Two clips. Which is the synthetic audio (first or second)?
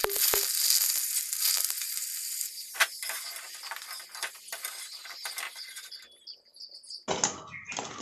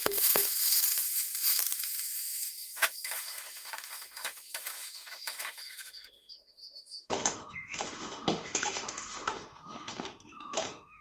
second